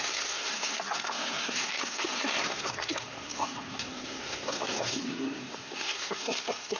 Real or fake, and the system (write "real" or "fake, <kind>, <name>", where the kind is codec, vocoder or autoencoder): fake, codec, SNAC